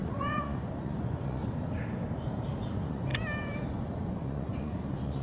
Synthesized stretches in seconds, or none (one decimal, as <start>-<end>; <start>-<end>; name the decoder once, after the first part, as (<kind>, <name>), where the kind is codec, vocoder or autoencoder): 0.0-1.4 (vocoder, Vocos); 2.7-3.1; 3.7-5.2